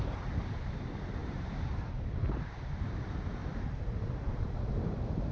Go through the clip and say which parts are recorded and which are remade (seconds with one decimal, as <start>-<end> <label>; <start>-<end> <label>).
0.0-3.4 remade; 3.4-4.4 recorded; 4.4-5.3 remade